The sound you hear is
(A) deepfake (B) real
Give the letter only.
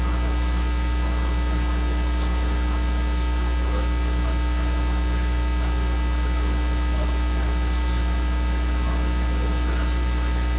B